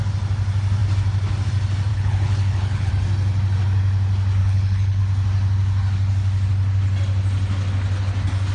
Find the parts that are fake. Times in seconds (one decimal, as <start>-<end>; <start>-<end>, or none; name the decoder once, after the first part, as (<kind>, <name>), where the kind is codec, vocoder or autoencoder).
1.9-2.9 (codec, HILCodec); 4.4-5.0